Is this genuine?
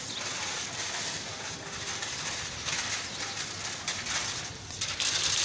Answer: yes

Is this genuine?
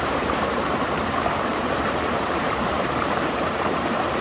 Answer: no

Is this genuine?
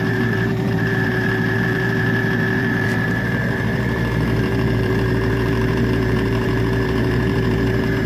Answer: no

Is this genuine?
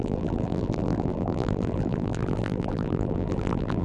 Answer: no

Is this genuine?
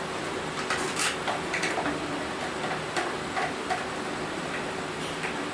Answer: no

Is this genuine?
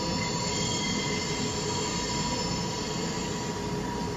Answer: yes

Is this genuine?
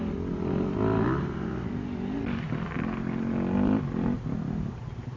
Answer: yes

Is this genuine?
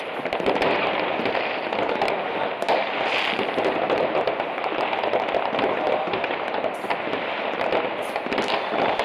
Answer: no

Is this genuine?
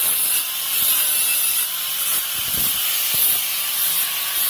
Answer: no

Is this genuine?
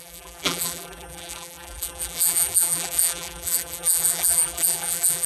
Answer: no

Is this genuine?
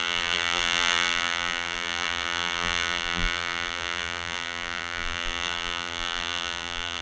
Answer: no